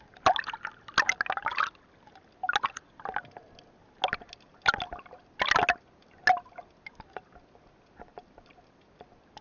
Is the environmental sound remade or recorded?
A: recorded